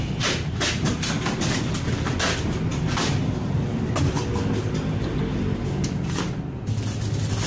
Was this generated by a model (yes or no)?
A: no